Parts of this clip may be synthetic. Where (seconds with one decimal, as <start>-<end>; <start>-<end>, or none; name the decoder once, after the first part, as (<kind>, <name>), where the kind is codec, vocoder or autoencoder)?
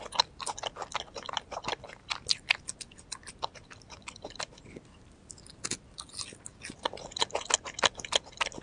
6.5-7.2 (vocoder, BigVGAN v2)